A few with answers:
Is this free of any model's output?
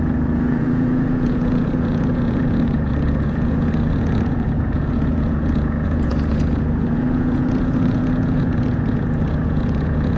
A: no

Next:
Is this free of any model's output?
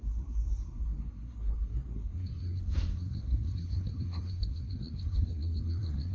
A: no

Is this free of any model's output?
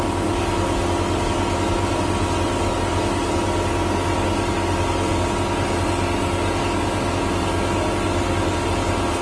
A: yes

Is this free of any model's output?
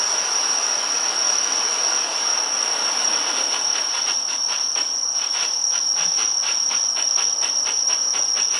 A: yes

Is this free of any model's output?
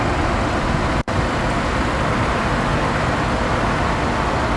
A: yes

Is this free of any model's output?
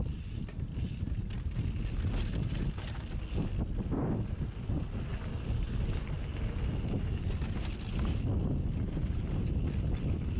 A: yes